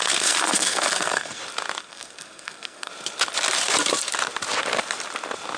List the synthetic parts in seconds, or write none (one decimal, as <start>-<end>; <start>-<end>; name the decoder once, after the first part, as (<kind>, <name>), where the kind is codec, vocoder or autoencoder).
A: 0.0-1.4 (codec, SNAC); 1.8-2.9